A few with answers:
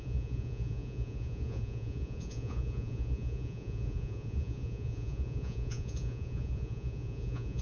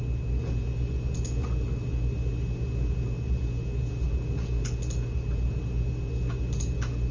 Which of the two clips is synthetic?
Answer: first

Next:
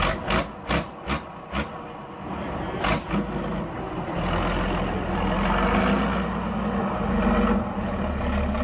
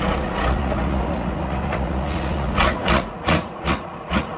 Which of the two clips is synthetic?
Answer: second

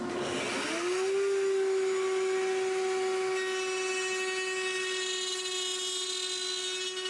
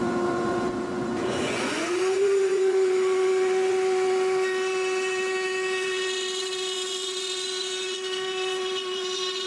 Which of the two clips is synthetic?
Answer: second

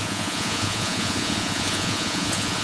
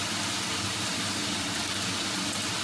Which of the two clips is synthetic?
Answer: first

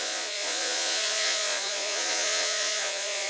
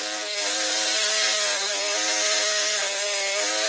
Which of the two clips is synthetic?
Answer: first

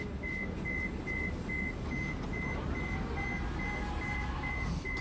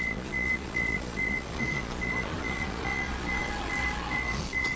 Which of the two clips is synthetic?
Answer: second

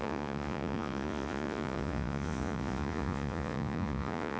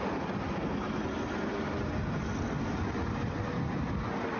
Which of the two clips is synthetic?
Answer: first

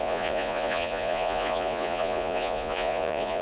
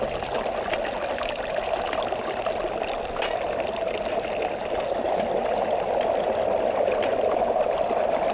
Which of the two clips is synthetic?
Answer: first